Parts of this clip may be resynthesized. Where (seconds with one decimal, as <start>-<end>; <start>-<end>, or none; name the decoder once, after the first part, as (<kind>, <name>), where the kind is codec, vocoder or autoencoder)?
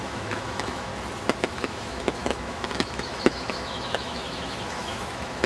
0.0-0.9 (autoencoder, DAC-VAE); 1.4-5.5